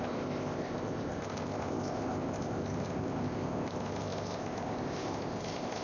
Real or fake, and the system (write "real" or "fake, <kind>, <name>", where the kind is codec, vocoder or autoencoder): fake, codec, ZipCodec